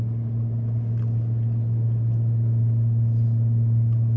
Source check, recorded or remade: recorded